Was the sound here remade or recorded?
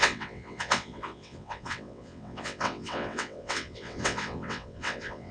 remade